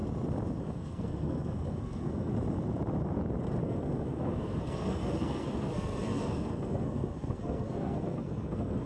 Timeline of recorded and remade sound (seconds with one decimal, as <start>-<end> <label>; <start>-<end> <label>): 0.0-0.6 recorded; 0.6-2.3 remade; 2.3-3.6 recorded; 3.6-8.9 remade